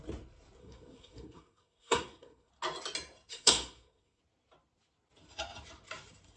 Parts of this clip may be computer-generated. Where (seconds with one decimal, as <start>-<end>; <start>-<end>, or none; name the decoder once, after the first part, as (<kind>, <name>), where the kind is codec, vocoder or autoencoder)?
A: 0.6-2.5 (codec, SNAC); 3.3-4.2